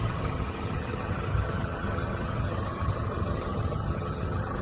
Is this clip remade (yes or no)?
yes